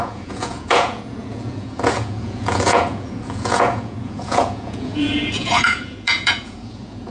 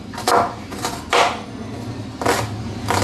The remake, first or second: first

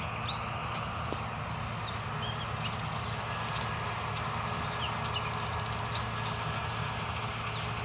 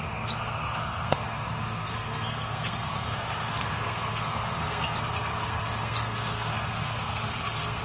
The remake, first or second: second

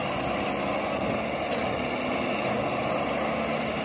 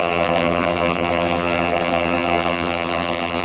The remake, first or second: second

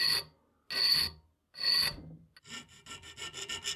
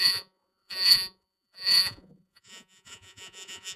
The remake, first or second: second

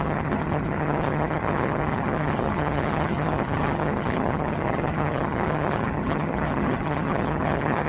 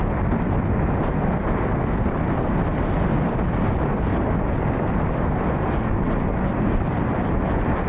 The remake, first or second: first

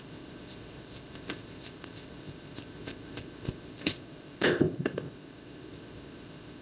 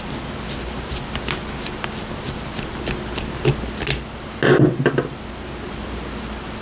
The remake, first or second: first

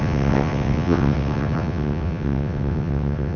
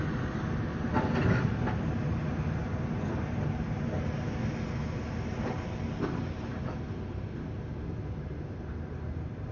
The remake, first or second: first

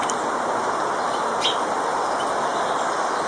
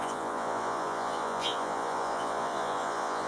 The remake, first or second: second